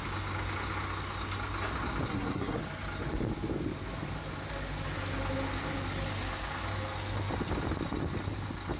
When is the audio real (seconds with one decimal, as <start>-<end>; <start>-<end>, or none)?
0.0-2.1; 2.6-8.8